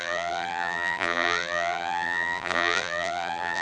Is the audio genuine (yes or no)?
no